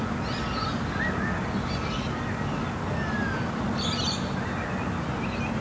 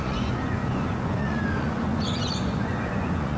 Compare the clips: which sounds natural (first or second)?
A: first